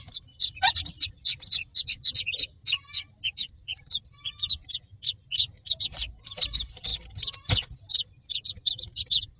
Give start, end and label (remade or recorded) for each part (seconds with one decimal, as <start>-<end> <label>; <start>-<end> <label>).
0.0-9.4 recorded